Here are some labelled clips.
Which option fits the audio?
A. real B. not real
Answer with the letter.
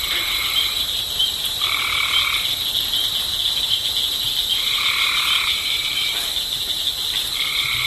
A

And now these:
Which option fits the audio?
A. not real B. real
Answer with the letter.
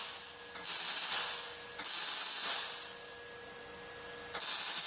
B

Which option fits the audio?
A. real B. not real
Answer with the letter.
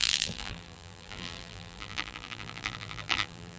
B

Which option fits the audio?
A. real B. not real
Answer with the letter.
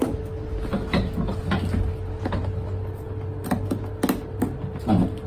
A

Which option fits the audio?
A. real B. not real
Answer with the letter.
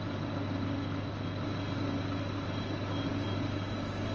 A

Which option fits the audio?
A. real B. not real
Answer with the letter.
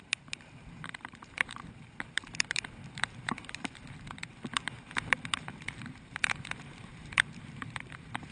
B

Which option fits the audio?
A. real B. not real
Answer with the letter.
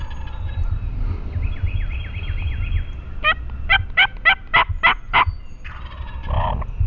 A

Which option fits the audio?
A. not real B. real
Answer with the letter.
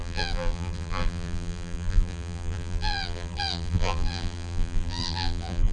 A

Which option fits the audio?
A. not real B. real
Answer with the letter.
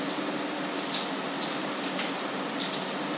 B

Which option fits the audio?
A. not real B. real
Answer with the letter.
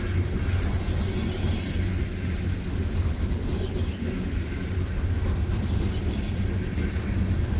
B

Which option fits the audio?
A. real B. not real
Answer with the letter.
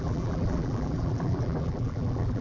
B